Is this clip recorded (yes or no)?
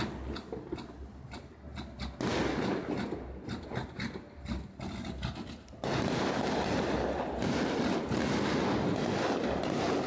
yes